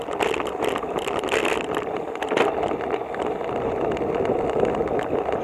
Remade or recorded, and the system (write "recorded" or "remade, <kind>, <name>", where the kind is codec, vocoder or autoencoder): recorded